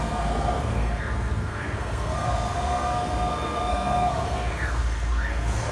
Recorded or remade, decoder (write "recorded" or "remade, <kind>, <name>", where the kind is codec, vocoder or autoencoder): remade, codec, SNAC